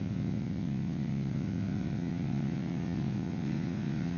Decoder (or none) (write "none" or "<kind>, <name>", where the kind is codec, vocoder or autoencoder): vocoder, WaveNeXt